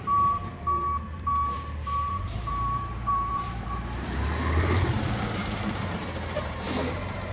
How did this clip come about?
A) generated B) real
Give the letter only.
A